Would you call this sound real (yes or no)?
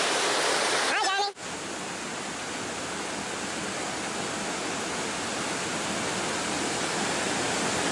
yes